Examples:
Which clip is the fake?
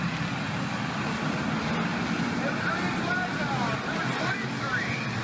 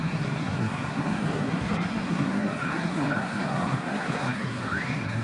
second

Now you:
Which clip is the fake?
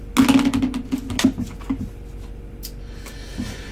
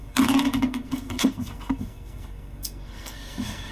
second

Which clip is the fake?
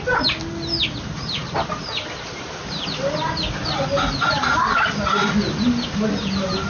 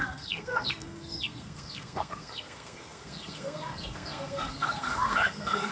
second